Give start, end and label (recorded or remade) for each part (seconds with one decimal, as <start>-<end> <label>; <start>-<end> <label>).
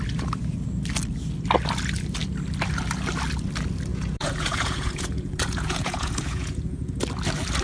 0.0-3.9 recorded; 3.9-7.0 remade; 7.0-7.6 recorded